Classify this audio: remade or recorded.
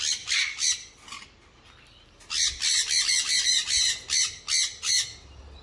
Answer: recorded